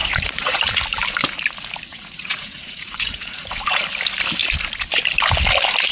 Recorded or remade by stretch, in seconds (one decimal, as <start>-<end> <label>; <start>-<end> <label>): 0.0-0.6 remade; 0.6-1.9 recorded; 1.9-3.8 remade; 3.8-5.9 recorded